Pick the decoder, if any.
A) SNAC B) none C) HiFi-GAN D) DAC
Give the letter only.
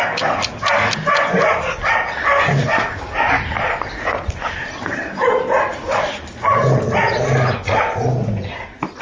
B